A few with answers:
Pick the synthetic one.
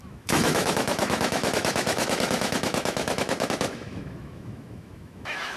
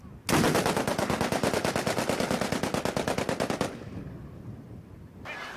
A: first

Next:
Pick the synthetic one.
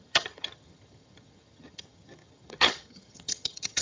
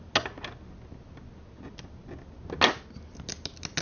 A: first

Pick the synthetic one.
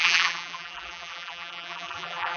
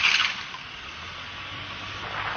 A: first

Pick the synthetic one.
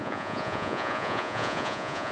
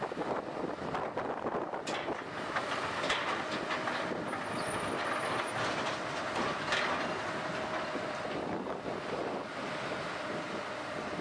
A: first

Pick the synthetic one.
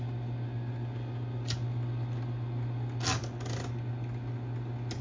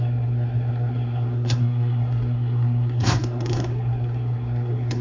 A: second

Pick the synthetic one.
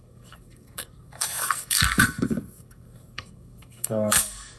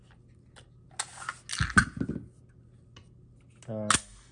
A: first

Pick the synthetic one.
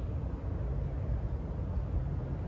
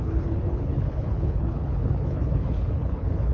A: second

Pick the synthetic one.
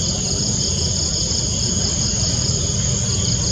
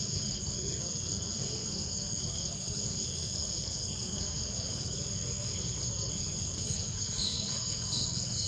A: second